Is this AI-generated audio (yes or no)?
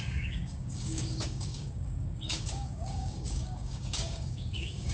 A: yes